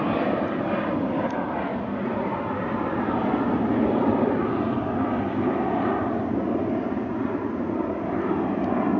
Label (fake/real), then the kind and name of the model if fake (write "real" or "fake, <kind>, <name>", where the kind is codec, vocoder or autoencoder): real